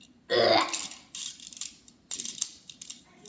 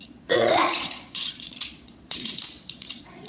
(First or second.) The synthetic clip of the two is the second